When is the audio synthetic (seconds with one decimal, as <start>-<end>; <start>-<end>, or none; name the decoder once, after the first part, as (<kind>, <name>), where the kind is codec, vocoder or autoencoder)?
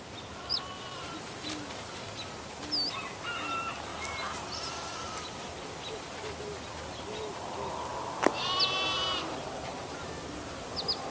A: none